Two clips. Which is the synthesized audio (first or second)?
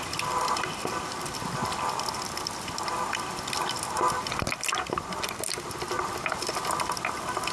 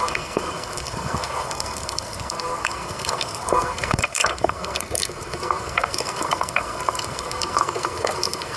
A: second